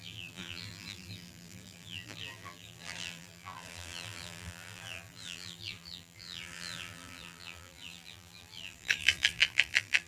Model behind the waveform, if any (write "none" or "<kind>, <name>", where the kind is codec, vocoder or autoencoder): vocoder, BigVGAN v2